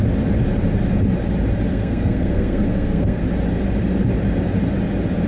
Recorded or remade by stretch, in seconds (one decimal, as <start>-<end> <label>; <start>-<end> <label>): 0.0-1.7 recorded; 1.7-3.2 remade; 3.2-5.3 recorded